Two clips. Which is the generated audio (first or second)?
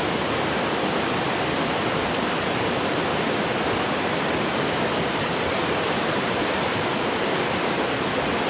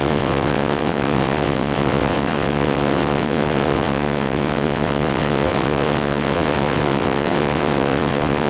second